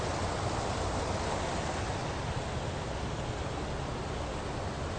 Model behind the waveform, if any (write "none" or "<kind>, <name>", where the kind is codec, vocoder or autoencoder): none